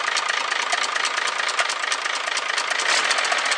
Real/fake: real